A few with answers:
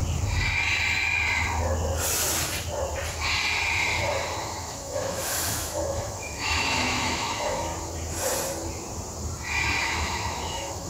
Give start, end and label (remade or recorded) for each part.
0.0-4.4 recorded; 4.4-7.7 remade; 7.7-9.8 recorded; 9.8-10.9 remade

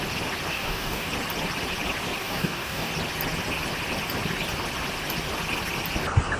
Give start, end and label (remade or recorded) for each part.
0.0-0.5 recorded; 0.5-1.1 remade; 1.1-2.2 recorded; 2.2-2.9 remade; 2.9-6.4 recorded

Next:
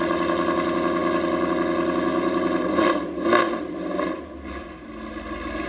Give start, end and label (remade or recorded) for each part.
0.0-2.1 recorded; 2.1-5.1 remade; 5.1-5.7 recorded